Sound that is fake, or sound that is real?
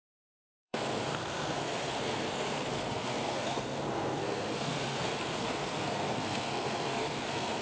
fake